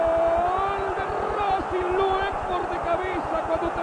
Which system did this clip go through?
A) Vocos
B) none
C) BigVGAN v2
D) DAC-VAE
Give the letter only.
B